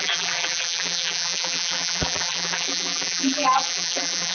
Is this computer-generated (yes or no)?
yes